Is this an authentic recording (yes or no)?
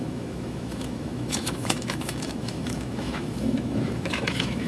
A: no